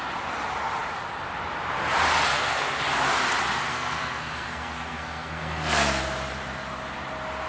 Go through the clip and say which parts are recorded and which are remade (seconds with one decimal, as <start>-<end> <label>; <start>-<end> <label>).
0.0-2.3 recorded; 2.3-2.8 remade; 2.8-3.7 recorded; 3.7-6.0 remade; 6.0-7.5 recorded